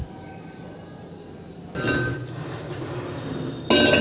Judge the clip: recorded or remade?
recorded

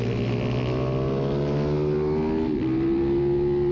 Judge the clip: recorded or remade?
recorded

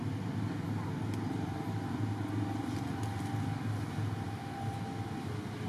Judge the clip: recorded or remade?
recorded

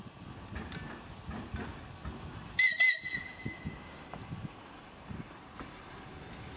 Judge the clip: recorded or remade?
recorded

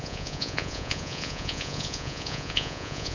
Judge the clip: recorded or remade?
remade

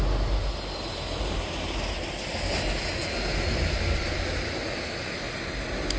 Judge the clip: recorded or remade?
recorded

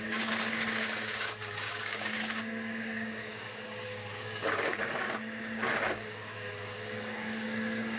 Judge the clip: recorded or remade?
remade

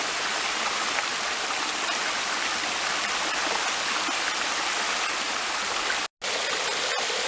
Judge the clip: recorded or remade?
recorded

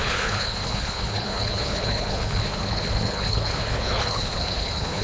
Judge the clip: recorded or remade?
remade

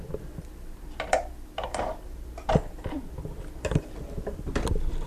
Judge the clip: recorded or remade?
remade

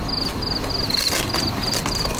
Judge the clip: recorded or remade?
recorded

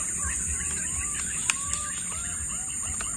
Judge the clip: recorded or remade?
recorded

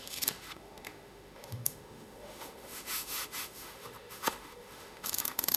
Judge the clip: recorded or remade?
remade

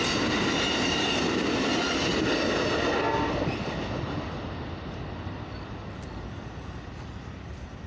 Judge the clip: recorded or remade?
recorded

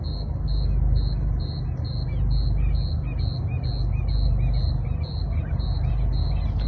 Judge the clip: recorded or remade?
recorded